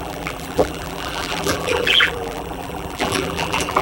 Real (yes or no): no